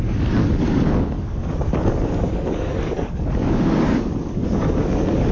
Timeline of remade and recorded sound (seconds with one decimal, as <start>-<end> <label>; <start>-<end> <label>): 0.0-5.3 remade